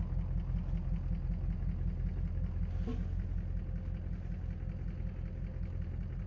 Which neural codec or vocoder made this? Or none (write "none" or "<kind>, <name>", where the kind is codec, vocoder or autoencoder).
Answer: none